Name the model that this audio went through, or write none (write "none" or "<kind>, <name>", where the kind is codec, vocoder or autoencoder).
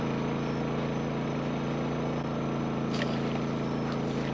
none